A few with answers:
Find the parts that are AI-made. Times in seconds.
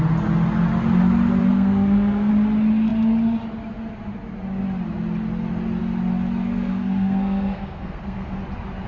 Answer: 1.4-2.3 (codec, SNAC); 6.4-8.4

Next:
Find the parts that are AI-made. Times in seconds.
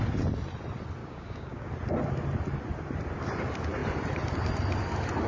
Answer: 1.0-1.7 (codec, DAC)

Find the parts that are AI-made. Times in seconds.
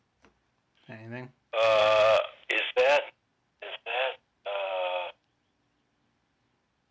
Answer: none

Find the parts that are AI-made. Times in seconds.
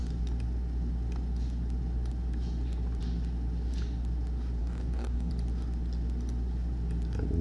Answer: 4.6-5.3 (codec, DAC)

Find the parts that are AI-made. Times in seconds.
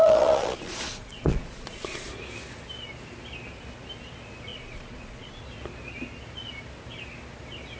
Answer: 0.0-2.1 (vocoder, Vocos); 4.5-5.4